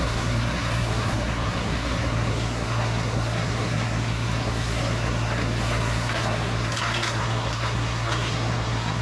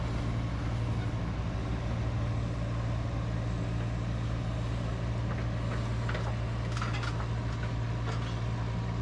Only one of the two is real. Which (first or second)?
second